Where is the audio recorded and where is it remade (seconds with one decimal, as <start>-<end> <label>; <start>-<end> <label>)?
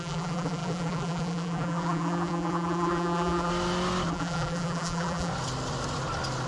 0.0-3.5 remade; 3.5-4.1 recorded; 4.1-5.3 remade; 5.3-6.5 recorded